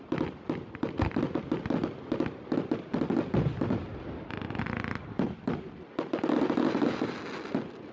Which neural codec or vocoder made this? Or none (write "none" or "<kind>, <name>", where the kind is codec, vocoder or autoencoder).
none